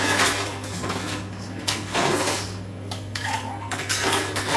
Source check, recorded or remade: remade